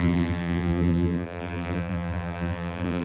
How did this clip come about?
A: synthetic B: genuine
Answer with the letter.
A